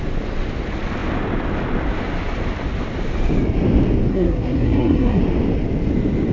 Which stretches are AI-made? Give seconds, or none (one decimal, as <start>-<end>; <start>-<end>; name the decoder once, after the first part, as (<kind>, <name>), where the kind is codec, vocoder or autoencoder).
4.1-5.2 (codec, SNAC)